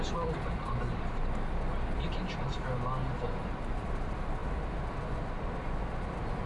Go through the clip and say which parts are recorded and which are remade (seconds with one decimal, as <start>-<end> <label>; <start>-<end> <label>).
0.0-6.5 recorded